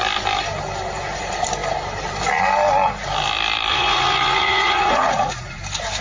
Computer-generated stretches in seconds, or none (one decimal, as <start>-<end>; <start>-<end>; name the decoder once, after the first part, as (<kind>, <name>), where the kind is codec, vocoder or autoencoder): 3.7-5.6 (vocoder, Vocos)